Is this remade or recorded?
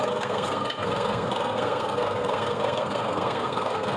remade